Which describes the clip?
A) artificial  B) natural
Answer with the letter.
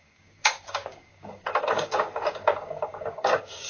A